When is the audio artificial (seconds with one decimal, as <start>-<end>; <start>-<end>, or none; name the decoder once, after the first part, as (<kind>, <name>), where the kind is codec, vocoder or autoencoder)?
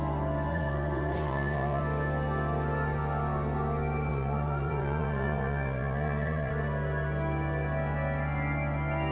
0.5-1.8 (vocoder, Vocos); 4.1-6.5